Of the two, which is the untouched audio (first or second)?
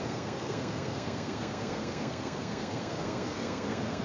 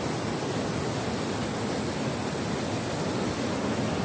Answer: second